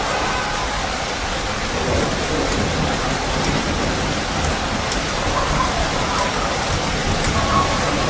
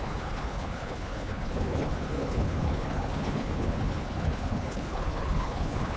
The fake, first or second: second